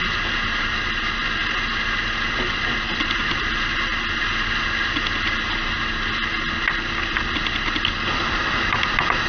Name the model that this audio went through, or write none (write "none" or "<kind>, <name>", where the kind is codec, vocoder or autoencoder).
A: none